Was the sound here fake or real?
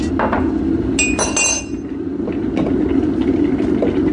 real